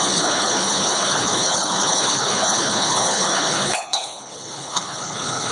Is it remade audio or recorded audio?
remade